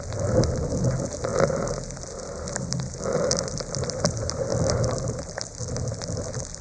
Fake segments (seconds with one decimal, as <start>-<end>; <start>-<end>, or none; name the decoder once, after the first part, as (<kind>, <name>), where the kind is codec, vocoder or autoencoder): 4.5-5.6 (vocoder, BigVGAN v2)